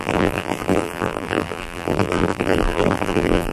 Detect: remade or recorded remade